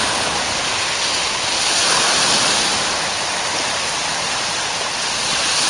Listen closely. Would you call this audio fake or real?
real